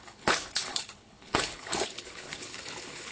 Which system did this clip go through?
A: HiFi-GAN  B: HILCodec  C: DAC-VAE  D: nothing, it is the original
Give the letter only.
B